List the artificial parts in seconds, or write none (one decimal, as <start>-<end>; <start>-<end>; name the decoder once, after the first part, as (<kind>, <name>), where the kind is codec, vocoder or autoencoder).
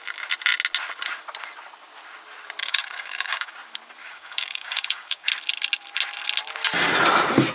2.6-3.5 (codec, DAC); 4.0-5.3